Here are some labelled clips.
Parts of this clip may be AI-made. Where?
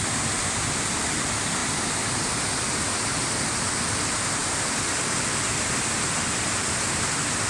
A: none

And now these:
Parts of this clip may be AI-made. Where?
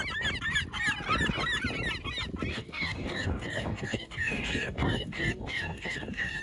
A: 2.5-6.4 (codec, DAC)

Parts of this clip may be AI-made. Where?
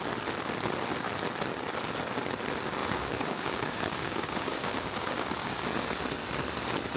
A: 2.8-5.6 (codec, DAC)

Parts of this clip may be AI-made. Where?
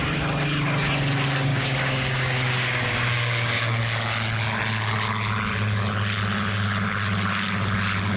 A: 1.5-3.8 (codec, DAC)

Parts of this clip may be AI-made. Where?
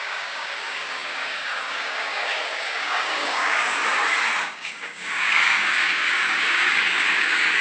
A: 0.0-3.8 (codec, DAC); 4.4-7.6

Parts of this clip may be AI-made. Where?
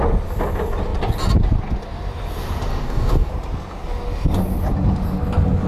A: 2.7-3.3 (codec, DAC)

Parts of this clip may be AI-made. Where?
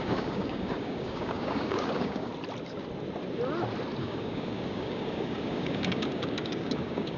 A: 0.0-2.3 (codec, DAC); 4.0-7.2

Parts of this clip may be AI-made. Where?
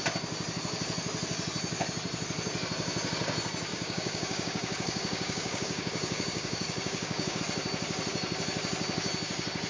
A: 3.7-7.4 (codec, DAC)